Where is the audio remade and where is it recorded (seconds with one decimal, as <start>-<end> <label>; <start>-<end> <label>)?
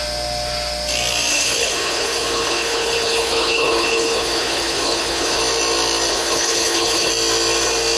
0.0-1.3 recorded; 1.3-5.4 remade; 5.4-6.1 recorded; 6.1-7.1 remade; 7.1-8.0 recorded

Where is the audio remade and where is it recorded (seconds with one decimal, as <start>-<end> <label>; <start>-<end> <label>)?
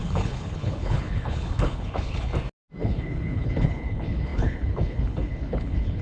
0.0-2.3 remade; 2.3-2.8 recorded; 2.8-6.0 remade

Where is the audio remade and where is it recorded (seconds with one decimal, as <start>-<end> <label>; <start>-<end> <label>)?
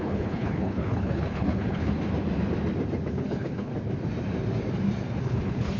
0.0-1.9 remade; 1.9-3.1 recorded; 3.1-3.7 remade; 3.7-5.2 recorded; 5.2-5.8 remade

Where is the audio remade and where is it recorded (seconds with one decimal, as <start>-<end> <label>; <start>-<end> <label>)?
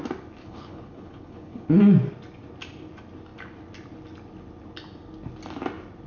0.0-0.4 recorded; 0.4-1.8 remade; 1.8-6.1 recorded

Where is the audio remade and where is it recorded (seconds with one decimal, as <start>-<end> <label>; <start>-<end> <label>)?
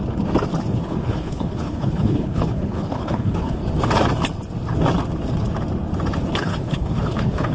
0.0-0.8 recorded; 0.8-3.6 remade; 3.6-6.4 recorded; 6.4-7.5 remade